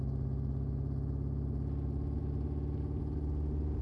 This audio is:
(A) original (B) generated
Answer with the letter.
A